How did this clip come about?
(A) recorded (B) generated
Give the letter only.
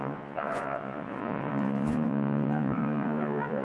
B